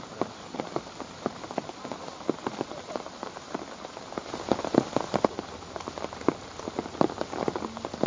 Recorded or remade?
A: recorded